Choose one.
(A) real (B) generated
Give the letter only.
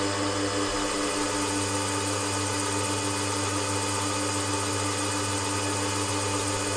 A